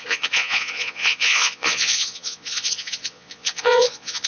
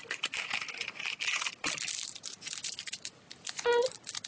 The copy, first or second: first